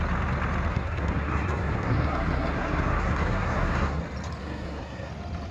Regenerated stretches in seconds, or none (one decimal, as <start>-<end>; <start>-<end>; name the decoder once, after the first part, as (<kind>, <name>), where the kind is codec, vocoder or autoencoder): 0.7-4.0 (codec, SNAC); 4.4-5.1